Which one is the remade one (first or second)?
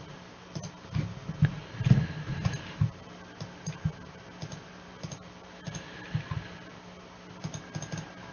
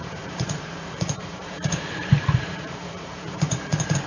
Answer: second